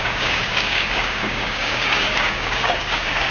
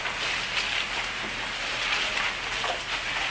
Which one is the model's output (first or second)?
first